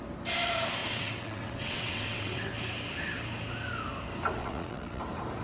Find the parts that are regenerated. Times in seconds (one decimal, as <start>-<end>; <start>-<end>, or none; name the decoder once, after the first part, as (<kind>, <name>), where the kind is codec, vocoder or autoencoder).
0.8-2.5 (vocoder, WaveNeXt); 4.4-5.0